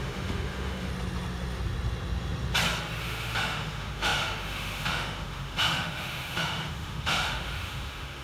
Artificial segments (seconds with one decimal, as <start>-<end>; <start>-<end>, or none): 0.0-0.9; 3.0-8.2